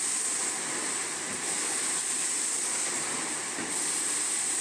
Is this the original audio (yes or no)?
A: yes